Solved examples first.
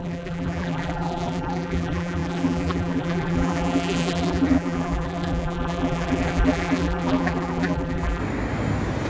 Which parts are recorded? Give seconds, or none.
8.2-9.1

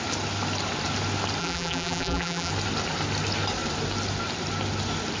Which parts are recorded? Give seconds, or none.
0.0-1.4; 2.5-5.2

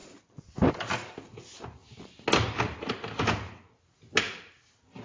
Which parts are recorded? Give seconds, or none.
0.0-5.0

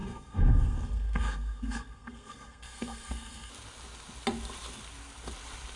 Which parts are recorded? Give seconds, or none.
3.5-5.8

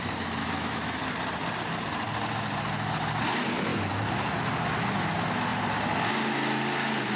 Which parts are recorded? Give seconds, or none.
0.0-0.4; 1.0-7.2

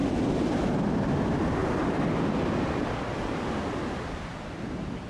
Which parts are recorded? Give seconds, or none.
0.0-5.1